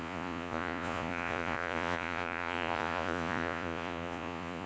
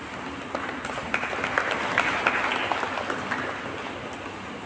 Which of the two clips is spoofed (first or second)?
first